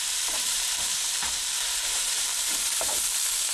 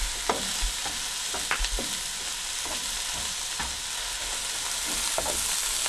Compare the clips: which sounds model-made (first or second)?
first